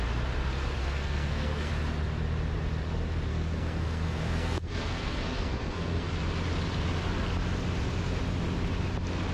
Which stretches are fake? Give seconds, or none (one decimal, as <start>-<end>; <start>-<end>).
0.8-1.7; 3.3-6.1